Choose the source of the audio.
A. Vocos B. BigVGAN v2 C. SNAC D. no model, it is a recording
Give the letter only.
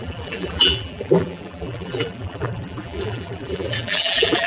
B